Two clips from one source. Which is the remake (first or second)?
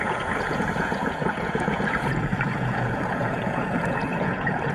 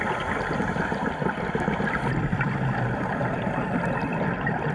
first